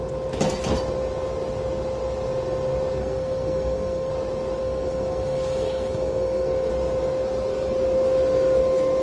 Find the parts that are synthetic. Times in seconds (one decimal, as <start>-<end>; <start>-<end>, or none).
3.0-4.1; 4.6-6.7